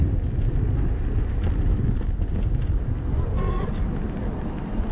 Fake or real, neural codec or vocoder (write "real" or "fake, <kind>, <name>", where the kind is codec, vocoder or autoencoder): real